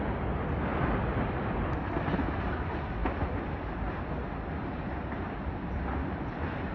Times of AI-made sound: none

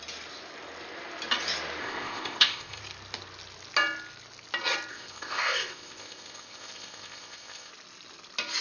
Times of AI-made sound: 1.8-2.8; 4.9-7.7

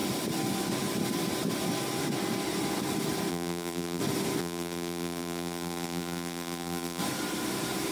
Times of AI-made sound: 3.3-4.0; 4.4-7.0

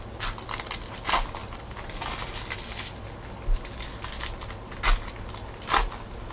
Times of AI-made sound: none

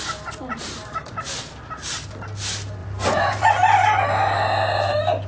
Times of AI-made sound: 0.8-1.6; 2.8-3.5